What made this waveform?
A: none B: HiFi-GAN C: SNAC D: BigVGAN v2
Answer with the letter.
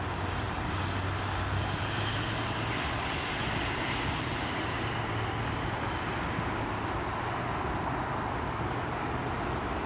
A